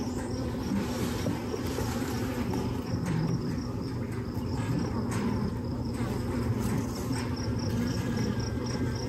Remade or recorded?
remade